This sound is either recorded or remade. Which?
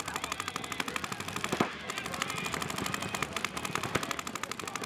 remade